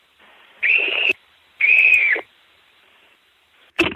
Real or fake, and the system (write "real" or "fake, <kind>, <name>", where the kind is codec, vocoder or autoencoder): fake, vocoder, BigVGAN v2